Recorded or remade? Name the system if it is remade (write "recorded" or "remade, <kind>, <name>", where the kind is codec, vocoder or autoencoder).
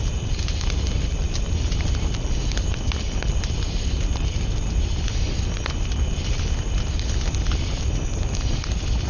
recorded